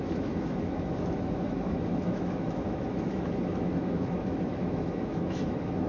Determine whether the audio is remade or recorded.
remade